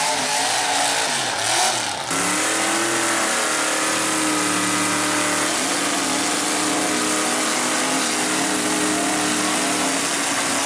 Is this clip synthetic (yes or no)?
no